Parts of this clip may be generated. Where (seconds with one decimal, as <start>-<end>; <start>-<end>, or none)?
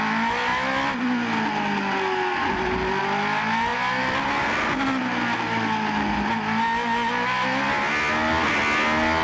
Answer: none